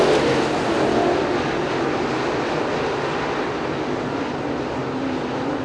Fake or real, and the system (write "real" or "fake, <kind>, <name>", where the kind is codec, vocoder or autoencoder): real